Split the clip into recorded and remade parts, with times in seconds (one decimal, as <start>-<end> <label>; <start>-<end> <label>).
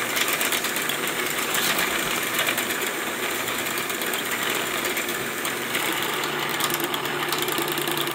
0.0-0.8 recorded; 0.8-4.4 remade; 4.4-5.1 recorded; 5.1-5.8 remade; 5.8-8.1 recorded